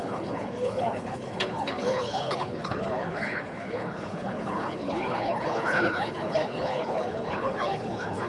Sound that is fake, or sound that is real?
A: fake